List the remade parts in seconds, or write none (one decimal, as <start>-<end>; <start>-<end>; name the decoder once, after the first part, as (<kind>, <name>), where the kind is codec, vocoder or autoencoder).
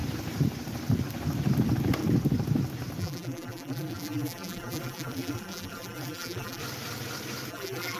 3.0-6.6 (vocoder, BigVGAN v2); 7.5-8.0